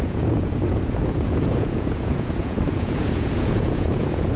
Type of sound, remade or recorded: remade